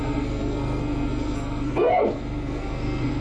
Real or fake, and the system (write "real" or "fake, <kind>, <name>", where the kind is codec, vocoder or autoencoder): fake, codec, SNAC